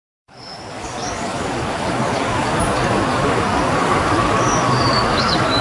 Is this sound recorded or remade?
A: remade